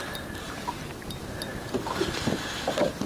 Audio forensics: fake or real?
real